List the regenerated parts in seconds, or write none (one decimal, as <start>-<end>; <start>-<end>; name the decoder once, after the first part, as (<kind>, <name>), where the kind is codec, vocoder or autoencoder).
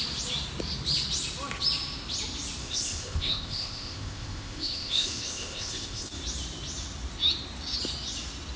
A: 2.6-6.1 (codec, ZipCodec)